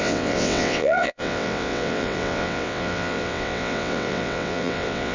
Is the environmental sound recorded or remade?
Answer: remade